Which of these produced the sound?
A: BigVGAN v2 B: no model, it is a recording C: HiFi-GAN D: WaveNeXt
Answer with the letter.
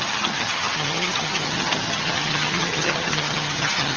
C